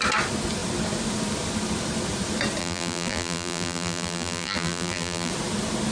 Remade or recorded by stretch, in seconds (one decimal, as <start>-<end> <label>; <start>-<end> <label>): 0.0-2.6 recorded; 2.6-5.3 remade; 5.3-5.9 recorded